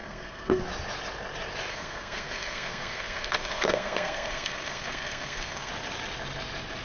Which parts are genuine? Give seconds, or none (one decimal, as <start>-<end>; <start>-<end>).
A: 0.6-1.7; 5.7-6.8